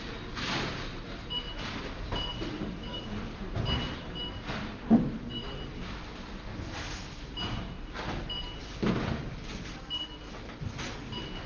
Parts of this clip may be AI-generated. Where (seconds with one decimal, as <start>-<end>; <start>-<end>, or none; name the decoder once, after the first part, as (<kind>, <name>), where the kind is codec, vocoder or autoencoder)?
none